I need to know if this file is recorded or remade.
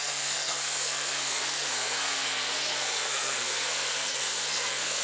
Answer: remade